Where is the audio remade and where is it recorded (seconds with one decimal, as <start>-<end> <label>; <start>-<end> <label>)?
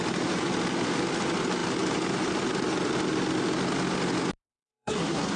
0.0-4.5 recorded; 4.5-5.4 remade